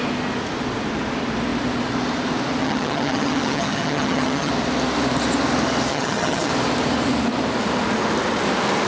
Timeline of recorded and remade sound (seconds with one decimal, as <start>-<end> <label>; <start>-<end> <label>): 0.0-2.6 recorded; 2.6-4.5 remade; 4.5-5.9 recorded; 5.9-6.5 remade; 6.5-8.9 recorded